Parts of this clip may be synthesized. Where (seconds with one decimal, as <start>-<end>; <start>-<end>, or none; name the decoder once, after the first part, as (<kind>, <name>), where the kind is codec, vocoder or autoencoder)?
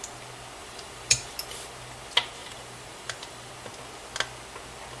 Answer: 0.6-1.3 (vocoder, BigVGAN v2); 2.4-3.5